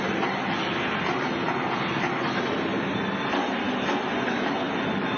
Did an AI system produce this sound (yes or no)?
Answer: no